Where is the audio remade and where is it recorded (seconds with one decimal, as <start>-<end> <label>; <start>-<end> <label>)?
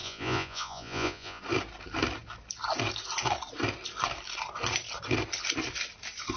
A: 0.0-1.4 remade; 1.4-6.4 recorded